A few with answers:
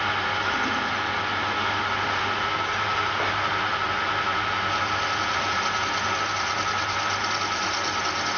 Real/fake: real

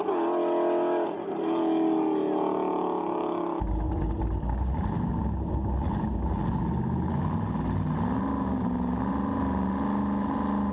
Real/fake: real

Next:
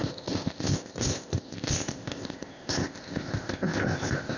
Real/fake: fake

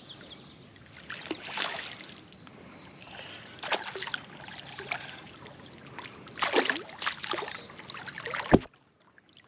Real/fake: real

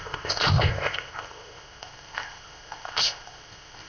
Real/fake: fake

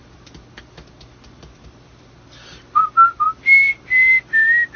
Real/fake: real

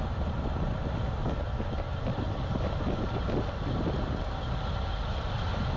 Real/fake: real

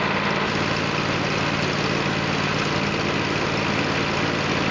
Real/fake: real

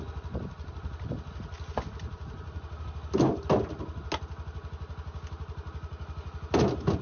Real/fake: real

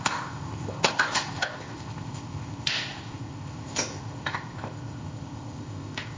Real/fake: fake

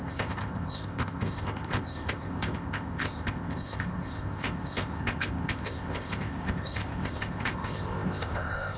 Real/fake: fake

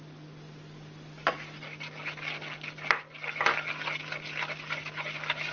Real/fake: real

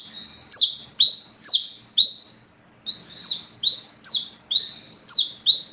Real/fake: real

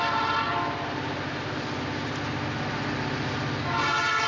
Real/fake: real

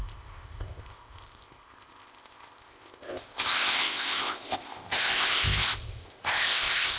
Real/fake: fake